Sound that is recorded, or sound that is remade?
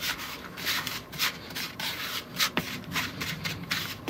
remade